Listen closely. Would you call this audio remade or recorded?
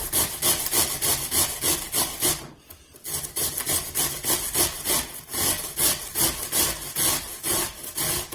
recorded